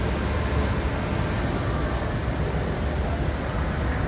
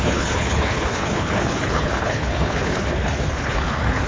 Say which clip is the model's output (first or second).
second